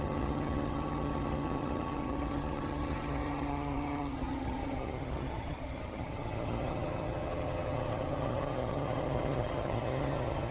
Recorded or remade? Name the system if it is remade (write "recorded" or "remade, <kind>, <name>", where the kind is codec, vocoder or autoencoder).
remade, vocoder, HiFi-GAN